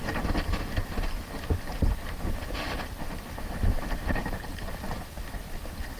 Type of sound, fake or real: real